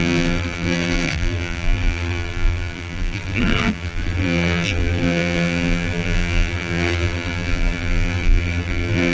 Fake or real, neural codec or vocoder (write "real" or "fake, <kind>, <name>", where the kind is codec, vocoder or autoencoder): fake, vocoder, BigVGAN v2